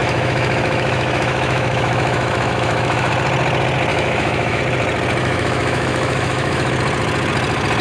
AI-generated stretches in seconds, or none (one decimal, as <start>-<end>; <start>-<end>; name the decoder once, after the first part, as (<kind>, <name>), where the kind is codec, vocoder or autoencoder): 0.0-3.1 (autoencoder, DAC-VAE); 3.9-4.6; 5.2-6.7